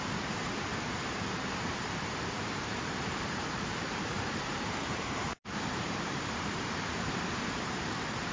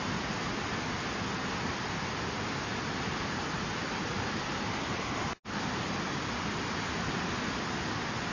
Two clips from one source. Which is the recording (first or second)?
second